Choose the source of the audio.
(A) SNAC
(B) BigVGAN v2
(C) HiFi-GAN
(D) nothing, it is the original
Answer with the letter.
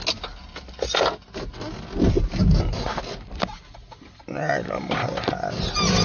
D